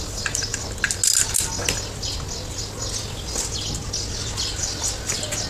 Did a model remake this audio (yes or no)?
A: no